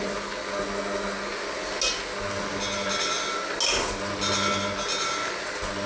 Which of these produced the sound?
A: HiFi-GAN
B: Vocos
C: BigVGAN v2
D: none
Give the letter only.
D